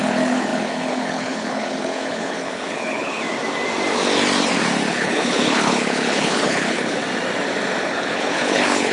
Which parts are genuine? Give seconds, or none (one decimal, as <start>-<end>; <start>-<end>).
3.2-4.9; 7.0-7.8